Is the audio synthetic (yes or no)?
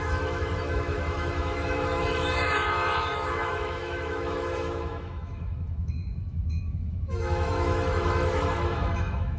yes